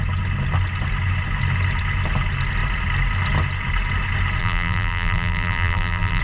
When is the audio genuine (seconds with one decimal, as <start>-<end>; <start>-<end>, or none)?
0.0-4.4